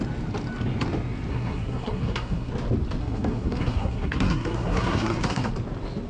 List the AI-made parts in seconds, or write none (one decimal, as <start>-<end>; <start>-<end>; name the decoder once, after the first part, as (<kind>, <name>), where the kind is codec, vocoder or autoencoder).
1.3-2.5 (codec, SNAC); 3.0-5.5